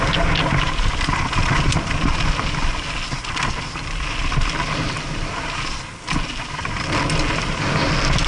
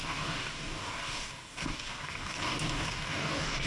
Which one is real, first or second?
first